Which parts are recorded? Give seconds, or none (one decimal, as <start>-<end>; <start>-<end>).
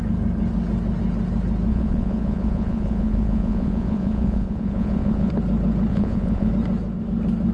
0.0-1.7; 5.3-5.9; 6.5-7.5